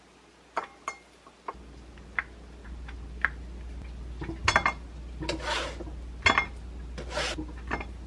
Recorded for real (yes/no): yes